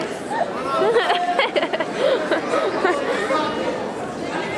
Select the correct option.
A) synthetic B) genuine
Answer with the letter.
B